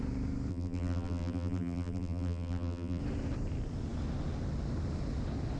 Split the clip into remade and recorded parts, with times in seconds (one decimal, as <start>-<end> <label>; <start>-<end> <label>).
0.0-0.5 recorded; 0.5-3.0 remade; 3.0-5.6 recorded